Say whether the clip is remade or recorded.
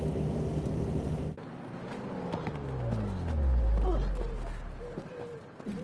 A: recorded